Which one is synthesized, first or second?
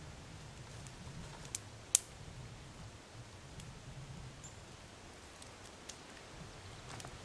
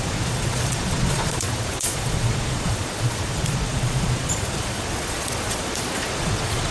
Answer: second